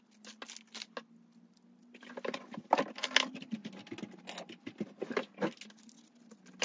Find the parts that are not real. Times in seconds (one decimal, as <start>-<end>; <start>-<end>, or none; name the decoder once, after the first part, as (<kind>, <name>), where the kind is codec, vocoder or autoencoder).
none